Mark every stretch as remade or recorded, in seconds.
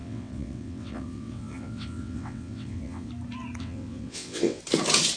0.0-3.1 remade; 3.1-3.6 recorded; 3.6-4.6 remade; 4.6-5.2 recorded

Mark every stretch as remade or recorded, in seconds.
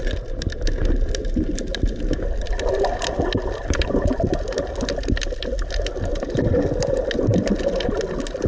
0.0-8.5 recorded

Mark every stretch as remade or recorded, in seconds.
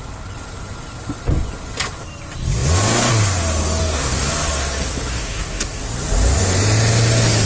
0.0-3.8 recorded; 3.8-4.3 remade; 4.3-5.1 recorded; 5.1-5.8 remade; 5.8-7.5 recorded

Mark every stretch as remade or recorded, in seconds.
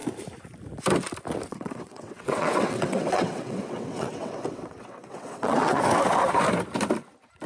0.0-1.5 recorded; 1.5-5.8 remade; 5.8-7.5 recorded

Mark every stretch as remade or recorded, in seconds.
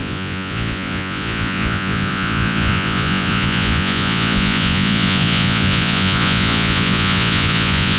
0.0-8.0 remade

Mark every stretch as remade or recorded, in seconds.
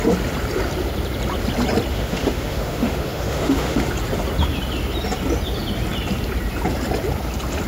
0.0-1.9 recorded; 1.9-3.9 remade; 3.9-7.7 recorded